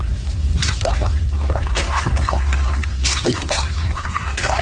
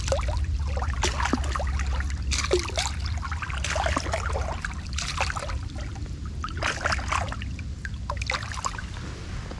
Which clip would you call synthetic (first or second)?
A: first